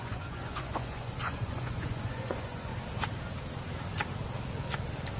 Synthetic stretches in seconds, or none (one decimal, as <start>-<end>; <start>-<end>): 0.0-2.7

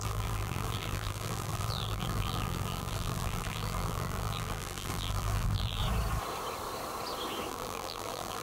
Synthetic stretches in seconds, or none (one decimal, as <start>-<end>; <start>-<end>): 0.0-5.8; 7.5-8.4

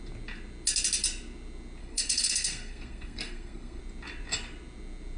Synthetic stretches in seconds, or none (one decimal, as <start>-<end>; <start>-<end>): 1.8-3.8